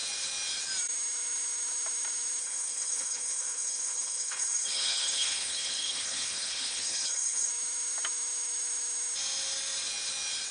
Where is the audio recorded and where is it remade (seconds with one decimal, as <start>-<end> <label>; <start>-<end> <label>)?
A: 0.0-2.4 recorded; 2.4-7.5 remade; 7.5-10.5 recorded